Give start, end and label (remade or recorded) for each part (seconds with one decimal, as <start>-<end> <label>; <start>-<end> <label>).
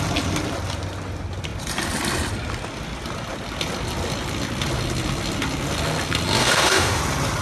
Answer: 0.0-6.4 recorded; 6.4-7.0 remade; 7.0-7.4 recorded